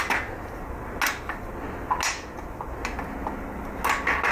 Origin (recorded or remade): recorded